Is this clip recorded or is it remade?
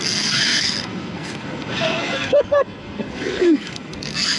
remade